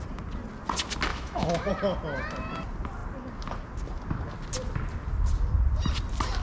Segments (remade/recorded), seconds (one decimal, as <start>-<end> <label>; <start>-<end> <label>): 0.0-1.1 recorded; 1.1-1.7 remade; 1.7-6.4 recorded